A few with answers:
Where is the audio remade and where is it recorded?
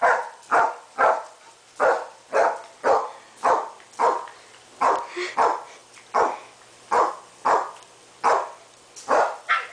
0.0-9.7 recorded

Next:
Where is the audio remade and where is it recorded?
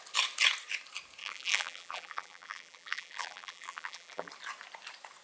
0.0-1.2 recorded; 1.2-4.3 remade; 4.3-5.2 recorded